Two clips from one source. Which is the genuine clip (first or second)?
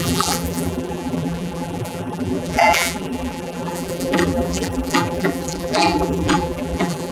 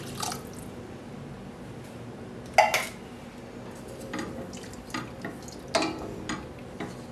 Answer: second